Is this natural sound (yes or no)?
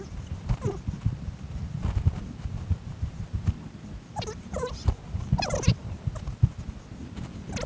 yes